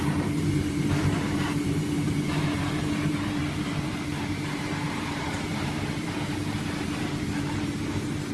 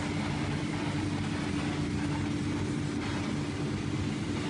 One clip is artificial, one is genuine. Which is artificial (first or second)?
first